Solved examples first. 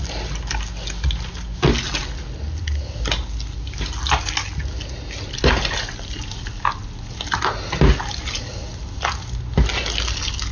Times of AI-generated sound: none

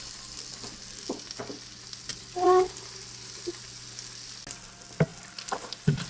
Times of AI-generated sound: 2.1-2.6 (vocoder, BigVGAN v2)

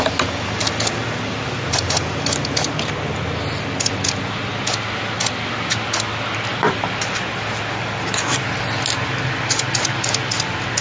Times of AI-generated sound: 6.5-7.1 (vocoder, BigVGAN v2)